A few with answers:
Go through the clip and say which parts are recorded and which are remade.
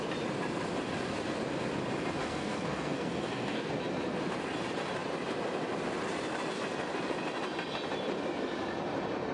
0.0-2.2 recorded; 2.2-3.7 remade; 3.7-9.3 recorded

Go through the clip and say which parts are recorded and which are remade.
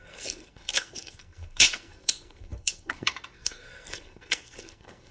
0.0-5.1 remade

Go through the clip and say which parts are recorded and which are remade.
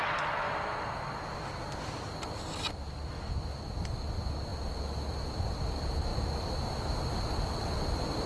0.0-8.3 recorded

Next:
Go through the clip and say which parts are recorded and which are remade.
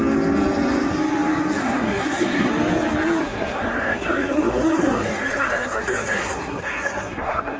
0.0-1.6 recorded; 1.6-2.5 remade; 2.5-3.2 recorded; 3.2-7.6 remade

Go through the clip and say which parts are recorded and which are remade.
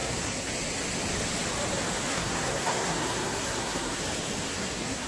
0.0-0.5 remade; 0.5-2.1 recorded; 2.1-4.0 remade; 4.0-4.5 recorded; 4.5-5.1 remade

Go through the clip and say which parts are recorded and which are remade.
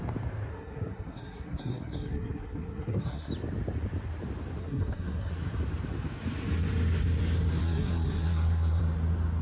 0.0-0.5 recorded; 0.5-3.3 remade; 3.3-4.6 recorded; 4.6-5.3 remade; 5.3-7.6 recorded; 7.6-8.8 remade; 8.8-9.4 recorded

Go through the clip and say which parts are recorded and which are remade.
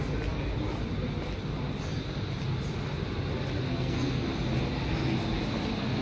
0.0-3.7 recorded; 3.7-4.3 remade; 4.3-6.0 recorded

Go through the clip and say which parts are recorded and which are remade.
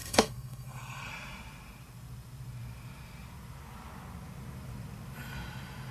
0.0-1.1 remade; 1.1-5.9 recorded